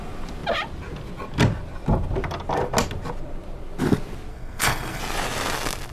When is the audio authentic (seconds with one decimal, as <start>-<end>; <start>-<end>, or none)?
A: 0.0-4.3; 5.0-5.9